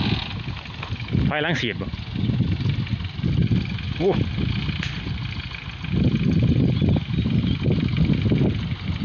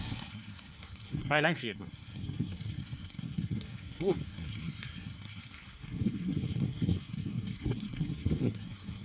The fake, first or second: second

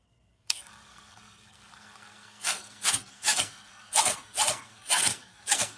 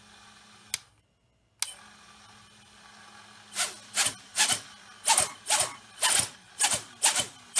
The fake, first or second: first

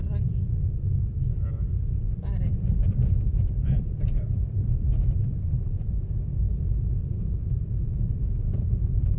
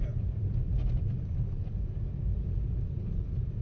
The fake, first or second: first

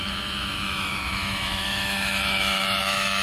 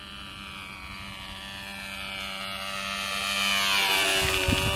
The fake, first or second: first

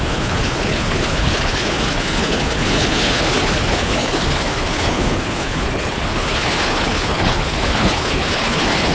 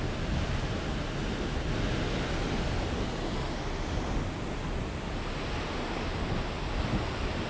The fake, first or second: first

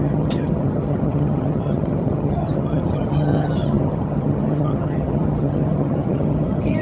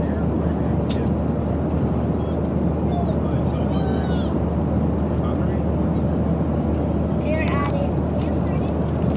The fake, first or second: first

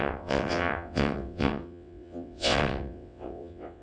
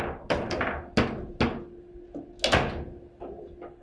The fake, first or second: first